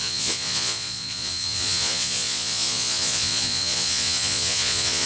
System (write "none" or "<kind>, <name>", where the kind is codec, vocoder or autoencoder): vocoder, Vocos